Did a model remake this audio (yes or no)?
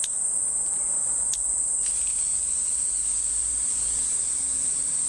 no